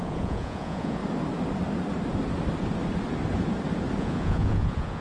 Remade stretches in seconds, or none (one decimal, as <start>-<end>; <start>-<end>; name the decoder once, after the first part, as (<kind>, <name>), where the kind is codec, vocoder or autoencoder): 0.0-1.0 (vocoder, Vocos); 4.0-5.0

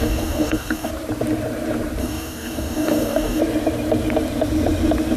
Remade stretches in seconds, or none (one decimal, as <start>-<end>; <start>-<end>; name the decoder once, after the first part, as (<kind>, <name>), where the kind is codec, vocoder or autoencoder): 0.0-0.9 (codec, DAC); 2.0-3.4

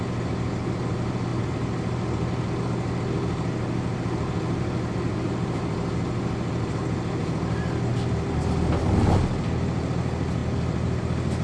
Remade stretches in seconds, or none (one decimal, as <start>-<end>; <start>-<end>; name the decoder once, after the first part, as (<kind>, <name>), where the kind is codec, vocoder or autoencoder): none

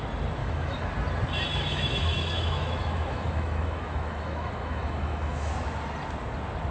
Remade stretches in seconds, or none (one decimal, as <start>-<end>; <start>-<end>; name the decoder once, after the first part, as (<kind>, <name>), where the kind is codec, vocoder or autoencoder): 0.4-0.9 (autoencoder, DAC-VAE); 1.5-5.5

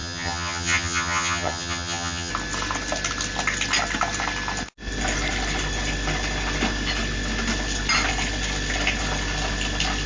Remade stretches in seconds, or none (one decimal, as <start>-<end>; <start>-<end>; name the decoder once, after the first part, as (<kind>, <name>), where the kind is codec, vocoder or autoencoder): 0.0-2.3 (vocoder, HiFi-GAN)

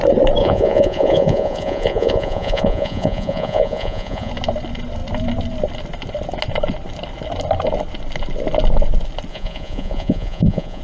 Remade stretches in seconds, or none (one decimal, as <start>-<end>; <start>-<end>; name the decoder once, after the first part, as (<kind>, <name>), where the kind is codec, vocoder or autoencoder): 0.4-4.3 (vocoder, Vocos); 9.3-10.8

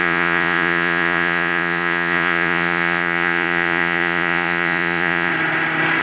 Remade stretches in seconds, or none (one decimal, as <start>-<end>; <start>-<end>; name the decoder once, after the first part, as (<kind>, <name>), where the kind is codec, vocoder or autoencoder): 0.0-5.3 (vocoder, Vocos)